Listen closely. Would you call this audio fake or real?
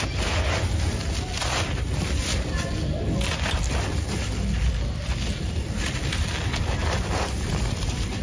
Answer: real